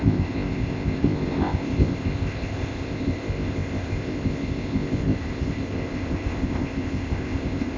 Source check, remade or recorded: remade